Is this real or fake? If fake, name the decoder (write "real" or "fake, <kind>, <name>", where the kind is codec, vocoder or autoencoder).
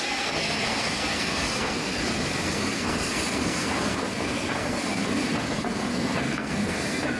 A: fake, codec, SNAC